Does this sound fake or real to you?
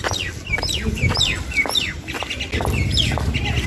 real